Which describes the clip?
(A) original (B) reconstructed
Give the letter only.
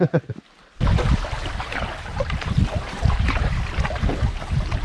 A